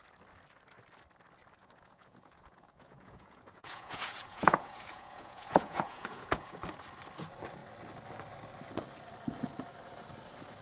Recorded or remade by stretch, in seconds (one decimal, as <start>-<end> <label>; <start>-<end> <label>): 0.0-1.6 recorded; 1.6-6.6 remade; 6.6-10.6 recorded

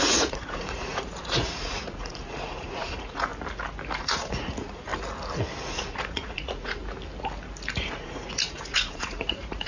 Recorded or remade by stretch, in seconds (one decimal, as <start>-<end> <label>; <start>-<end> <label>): 0.0-3.3 remade; 3.3-4.0 recorded; 4.0-4.9 remade; 4.9-5.6 recorded; 5.6-6.8 remade; 6.8-7.9 recorded; 7.9-9.7 remade